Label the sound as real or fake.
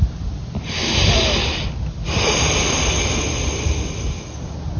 real